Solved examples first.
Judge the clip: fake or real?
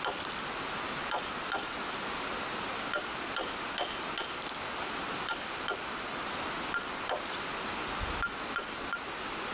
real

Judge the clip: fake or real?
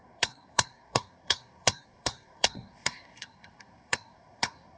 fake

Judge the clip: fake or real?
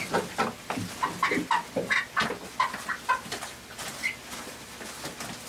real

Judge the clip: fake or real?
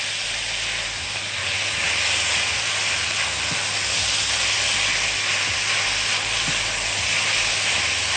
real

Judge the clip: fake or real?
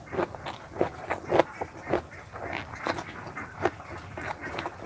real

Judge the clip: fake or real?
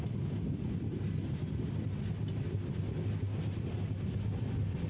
real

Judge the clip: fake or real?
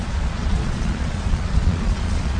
fake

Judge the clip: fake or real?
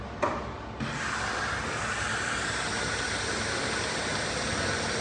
real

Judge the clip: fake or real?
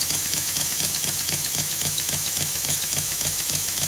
fake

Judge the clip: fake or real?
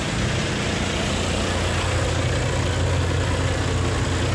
real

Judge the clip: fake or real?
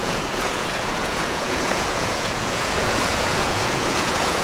fake